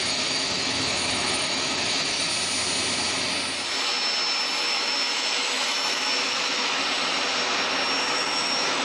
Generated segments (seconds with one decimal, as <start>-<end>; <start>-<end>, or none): 0.0-2.3; 4.6-6.8; 8.1-8.8